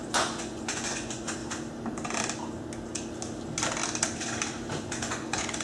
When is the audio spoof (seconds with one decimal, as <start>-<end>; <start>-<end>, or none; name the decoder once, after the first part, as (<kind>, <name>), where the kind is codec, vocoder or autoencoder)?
0.0-1.4 (vocoder, Vocos); 4.8-5.6